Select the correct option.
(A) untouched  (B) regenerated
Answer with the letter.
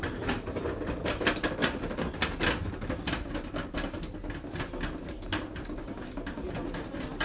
A